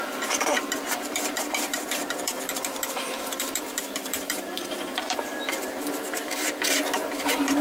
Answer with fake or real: fake